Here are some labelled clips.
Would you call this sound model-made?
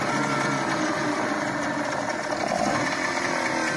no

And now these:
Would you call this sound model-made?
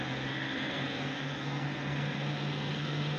yes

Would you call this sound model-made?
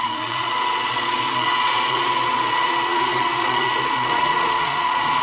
yes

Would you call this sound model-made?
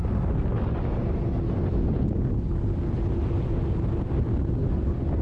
no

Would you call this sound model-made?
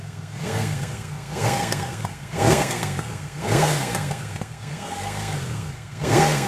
yes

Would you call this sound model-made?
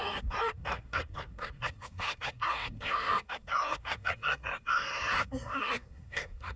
yes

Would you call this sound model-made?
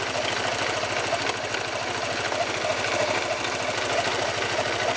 no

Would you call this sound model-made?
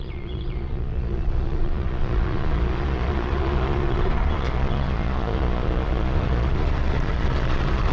yes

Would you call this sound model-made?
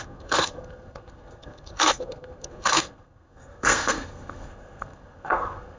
yes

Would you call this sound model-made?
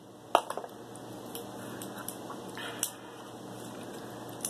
no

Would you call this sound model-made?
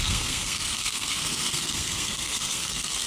yes